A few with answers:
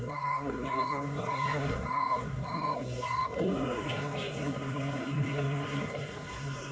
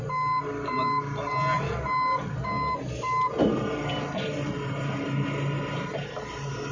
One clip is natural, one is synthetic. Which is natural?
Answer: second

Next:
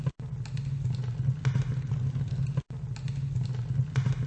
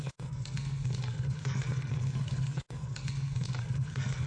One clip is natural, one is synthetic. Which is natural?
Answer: first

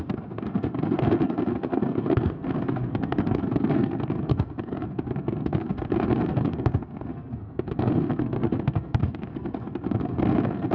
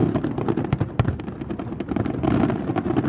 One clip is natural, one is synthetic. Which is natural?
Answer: second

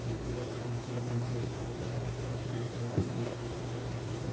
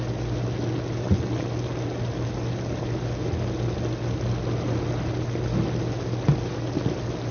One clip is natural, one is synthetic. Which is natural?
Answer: second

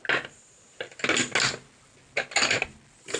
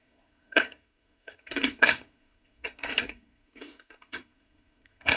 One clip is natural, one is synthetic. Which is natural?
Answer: first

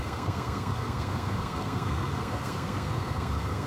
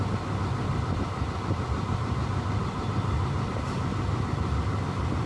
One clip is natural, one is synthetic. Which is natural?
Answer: second